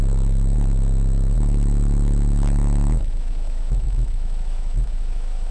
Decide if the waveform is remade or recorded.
remade